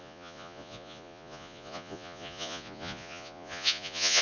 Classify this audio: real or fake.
fake